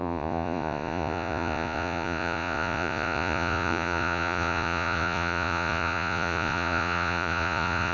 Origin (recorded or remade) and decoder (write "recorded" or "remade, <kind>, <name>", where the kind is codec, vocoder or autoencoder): remade, vocoder, Vocos